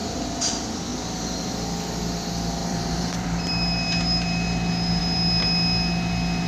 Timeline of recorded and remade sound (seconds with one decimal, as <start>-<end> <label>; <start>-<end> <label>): 0.0-2.6 recorded; 2.6-3.4 remade; 3.4-6.5 recorded